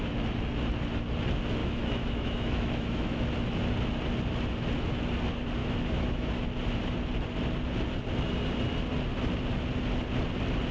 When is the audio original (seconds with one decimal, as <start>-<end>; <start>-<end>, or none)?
0.0-1.6; 3.2-5.6; 6.3-10.7